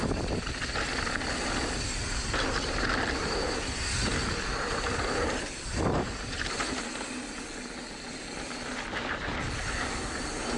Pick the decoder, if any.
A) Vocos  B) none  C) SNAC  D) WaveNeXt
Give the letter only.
B